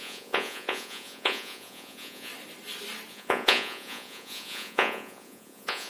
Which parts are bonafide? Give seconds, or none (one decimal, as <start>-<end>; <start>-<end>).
2.3-3.1